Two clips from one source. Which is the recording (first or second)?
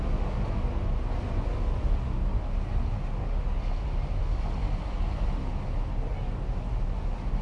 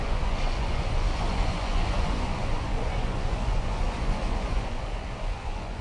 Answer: first